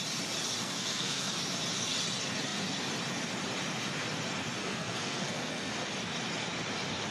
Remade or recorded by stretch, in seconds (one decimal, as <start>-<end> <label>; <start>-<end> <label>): 0.0-0.6 recorded; 0.6-1.4 remade; 1.4-4.6 recorded; 4.6-5.7 remade; 5.7-7.1 recorded